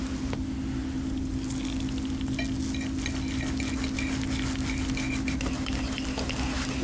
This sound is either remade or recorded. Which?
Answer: recorded